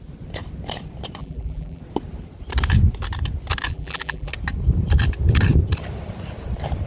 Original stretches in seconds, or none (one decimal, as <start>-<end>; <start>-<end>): 0.0-1.2; 1.8-3.7; 4.3-6.9